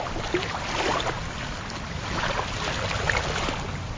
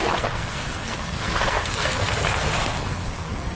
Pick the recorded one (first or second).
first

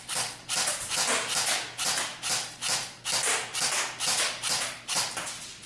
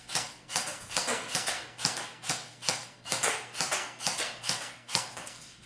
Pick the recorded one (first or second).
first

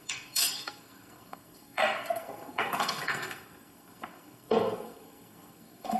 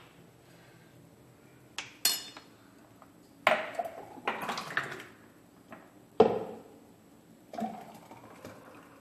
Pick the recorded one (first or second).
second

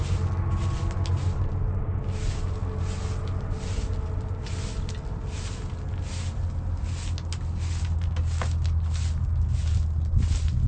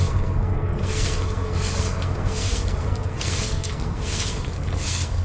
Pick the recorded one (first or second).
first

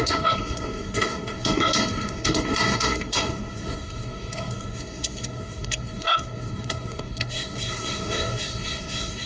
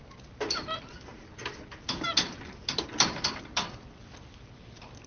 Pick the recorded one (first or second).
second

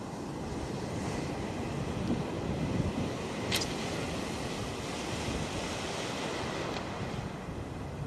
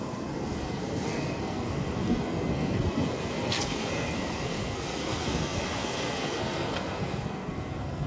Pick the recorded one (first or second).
first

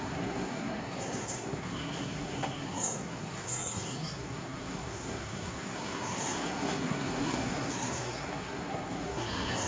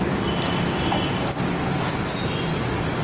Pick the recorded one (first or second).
second